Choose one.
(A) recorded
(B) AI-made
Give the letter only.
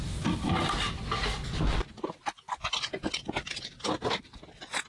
A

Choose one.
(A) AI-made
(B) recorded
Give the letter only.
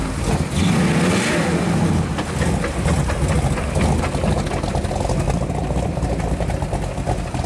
B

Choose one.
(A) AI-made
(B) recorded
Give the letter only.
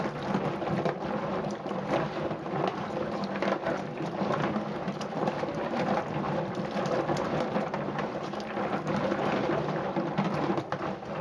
B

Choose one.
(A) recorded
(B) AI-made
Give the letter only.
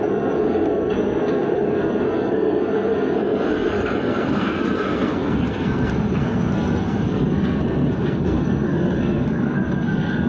B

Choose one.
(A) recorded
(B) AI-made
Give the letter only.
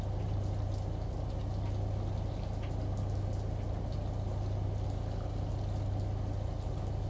A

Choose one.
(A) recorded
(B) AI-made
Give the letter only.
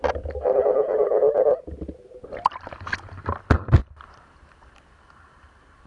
A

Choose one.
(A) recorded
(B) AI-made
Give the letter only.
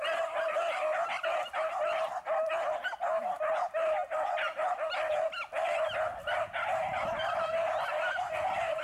A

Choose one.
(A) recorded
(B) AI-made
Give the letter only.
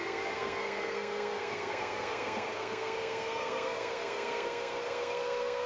B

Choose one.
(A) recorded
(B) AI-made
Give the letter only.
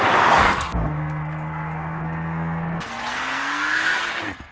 B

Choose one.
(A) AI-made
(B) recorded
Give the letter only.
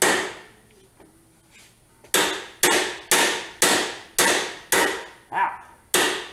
B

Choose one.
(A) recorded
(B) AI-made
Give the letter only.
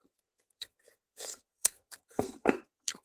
B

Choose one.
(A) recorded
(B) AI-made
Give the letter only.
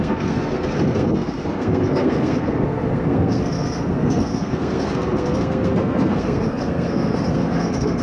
B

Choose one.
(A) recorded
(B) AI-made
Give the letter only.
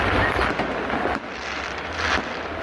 A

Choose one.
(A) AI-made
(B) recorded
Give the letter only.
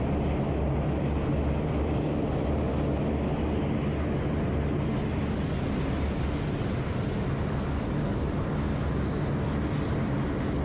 B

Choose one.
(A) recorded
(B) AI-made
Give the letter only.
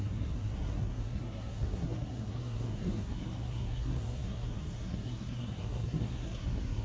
B